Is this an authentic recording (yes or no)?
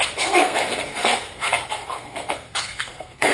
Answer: no